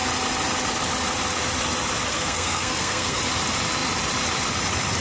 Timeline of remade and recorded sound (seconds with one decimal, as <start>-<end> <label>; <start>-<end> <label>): 0.0-2.1 recorded; 2.1-3.2 remade; 3.2-5.0 recorded